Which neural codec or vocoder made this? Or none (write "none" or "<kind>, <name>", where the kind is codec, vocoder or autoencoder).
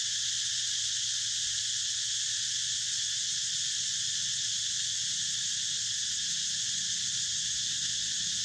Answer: none